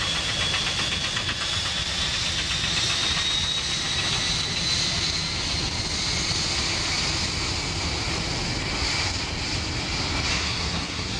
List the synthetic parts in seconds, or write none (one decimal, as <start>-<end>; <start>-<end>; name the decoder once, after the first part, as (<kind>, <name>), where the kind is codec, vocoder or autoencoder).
10.3-11.2 (codec, SNAC)